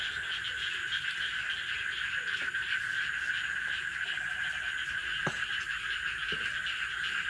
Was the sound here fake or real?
real